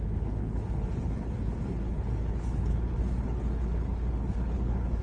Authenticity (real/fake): fake